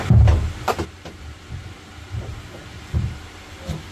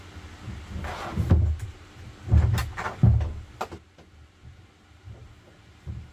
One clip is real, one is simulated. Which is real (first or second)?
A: second